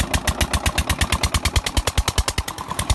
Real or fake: real